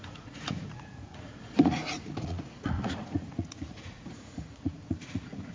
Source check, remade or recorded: remade